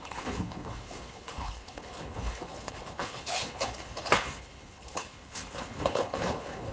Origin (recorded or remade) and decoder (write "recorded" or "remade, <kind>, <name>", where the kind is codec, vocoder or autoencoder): remade, codec, HILCodec